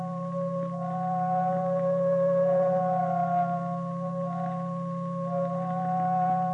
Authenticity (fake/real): real